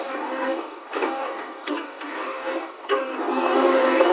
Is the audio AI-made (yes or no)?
yes